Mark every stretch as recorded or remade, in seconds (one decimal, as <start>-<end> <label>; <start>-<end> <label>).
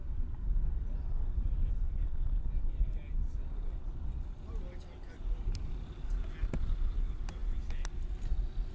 0.0-8.7 recorded